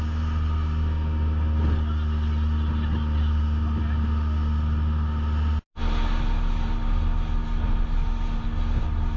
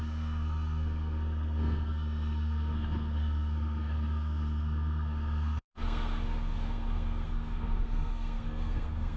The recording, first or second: first